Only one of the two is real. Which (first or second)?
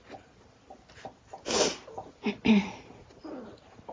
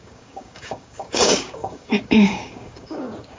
first